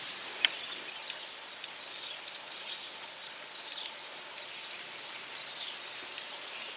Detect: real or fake real